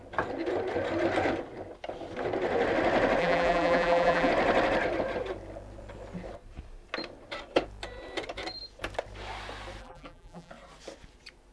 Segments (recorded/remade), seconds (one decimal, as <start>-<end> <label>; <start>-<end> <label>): 0.0-3.2 recorded; 3.2-4.3 remade; 4.3-9.8 recorded; 9.8-10.5 remade; 10.5-11.5 recorded